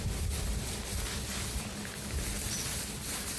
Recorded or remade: recorded